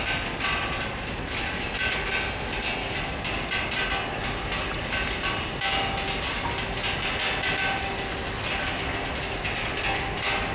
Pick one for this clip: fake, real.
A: real